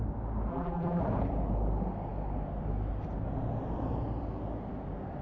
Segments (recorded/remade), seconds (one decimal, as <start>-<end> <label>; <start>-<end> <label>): 0.0-0.5 recorded; 0.5-1.0 remade; 1.0-5.2 recorded

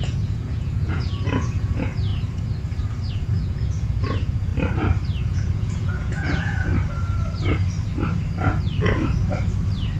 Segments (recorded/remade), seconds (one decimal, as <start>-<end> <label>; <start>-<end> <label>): 0.0-2.1 remade; 2.1-3.1 recorded; 3.1-4.5 remade; 4.5-5.2 recorded; 5.2-6.7 remade; 6.7-10.0 recorded